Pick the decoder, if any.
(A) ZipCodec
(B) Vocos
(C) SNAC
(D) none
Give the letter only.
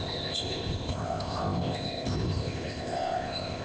A